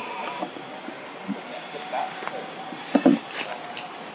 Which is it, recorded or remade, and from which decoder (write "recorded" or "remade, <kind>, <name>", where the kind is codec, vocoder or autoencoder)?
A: recorded